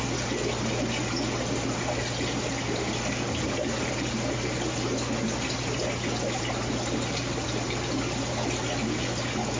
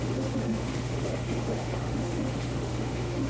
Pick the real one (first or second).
first